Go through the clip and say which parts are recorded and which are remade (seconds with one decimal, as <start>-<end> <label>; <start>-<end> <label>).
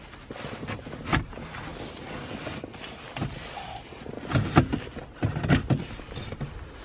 0.0-6.8 recorded